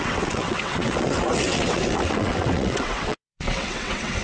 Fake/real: fake